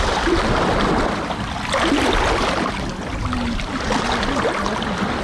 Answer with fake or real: real